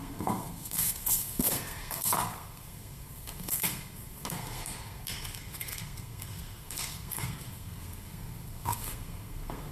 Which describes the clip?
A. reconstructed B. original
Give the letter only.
A